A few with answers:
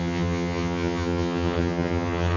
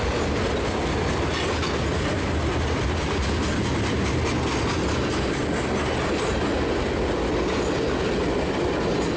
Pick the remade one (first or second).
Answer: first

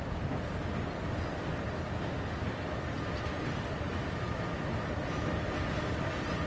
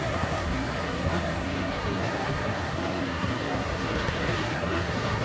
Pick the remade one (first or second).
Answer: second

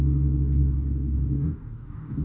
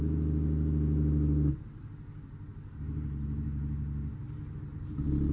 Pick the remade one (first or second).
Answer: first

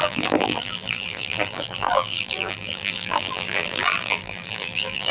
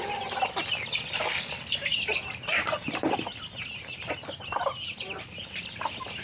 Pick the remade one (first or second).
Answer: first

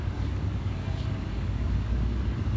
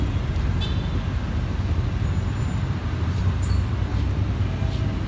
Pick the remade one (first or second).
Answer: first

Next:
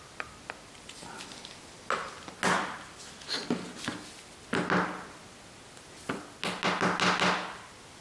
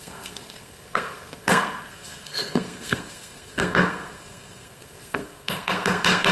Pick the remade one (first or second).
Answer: second